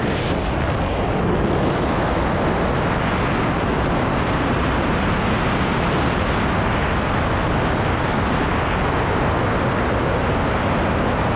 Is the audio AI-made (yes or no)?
no